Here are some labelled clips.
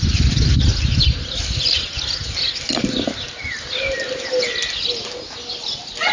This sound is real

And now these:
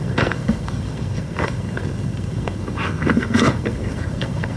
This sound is fake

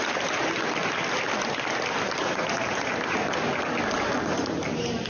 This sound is real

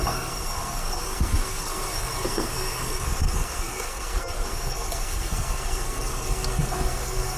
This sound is fake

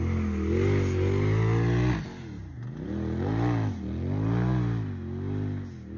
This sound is real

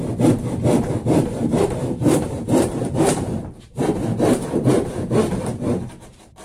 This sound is fake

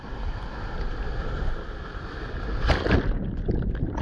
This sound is real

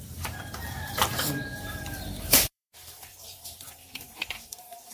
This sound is fake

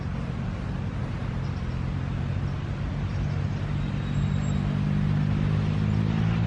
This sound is real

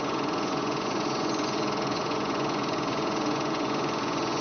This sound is fake